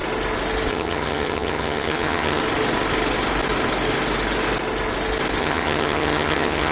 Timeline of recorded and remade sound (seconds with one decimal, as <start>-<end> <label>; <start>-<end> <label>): 0.0-0.7 recorded; 0.7-2.4 remade; 2.4-5.4 recorded; 5.4-6.7 remade